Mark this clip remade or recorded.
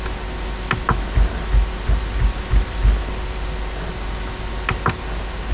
recorded